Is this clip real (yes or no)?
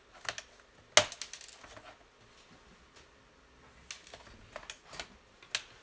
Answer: yes